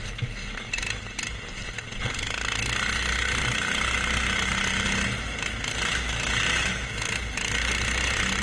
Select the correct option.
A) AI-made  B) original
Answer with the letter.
B